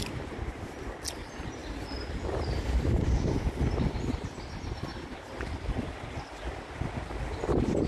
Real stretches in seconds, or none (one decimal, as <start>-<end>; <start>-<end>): 0.0-7.9